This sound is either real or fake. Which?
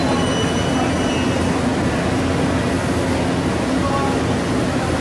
real